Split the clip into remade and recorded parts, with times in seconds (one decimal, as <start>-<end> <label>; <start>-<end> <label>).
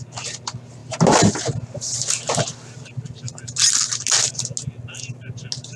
0.0-5.8 recorded